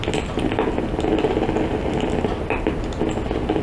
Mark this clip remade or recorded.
recorded